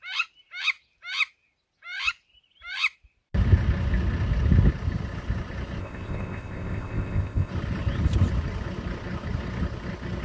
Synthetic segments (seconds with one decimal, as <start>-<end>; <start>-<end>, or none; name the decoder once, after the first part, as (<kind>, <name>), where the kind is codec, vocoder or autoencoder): 5.8-7.5 (codec, ZipCodec)